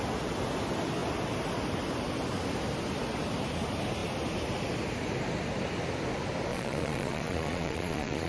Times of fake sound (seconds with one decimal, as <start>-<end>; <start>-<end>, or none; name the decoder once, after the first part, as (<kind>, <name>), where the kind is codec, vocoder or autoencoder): 6.5-8.3 (vocoder, Vocos)

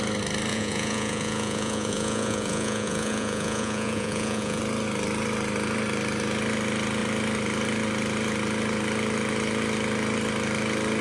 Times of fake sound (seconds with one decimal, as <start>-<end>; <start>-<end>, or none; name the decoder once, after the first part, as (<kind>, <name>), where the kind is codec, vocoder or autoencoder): 0.5-4.6 (vocoder, Vocos)

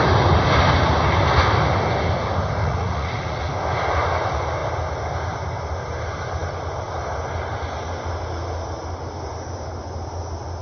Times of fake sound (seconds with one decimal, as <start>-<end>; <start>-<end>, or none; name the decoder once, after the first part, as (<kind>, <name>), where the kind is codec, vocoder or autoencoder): 2.6-3.5 (vocoder, Vocos)